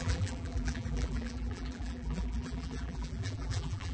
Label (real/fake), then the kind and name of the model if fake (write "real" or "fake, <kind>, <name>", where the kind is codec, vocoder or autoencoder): fake, vocoder, BigVGAN v2